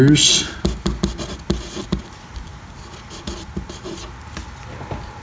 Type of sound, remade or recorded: recorded